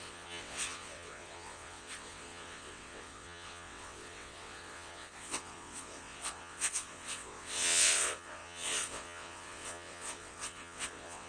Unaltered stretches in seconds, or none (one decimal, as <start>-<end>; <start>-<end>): none